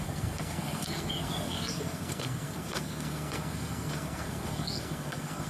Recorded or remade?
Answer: remade